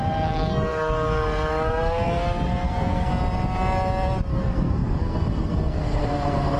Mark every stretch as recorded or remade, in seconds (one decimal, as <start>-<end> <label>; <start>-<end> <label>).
0.0-3.1 remade; 3.1-4.3 recorded; 4.3-6.6 remade